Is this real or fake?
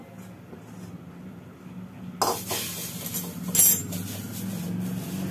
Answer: real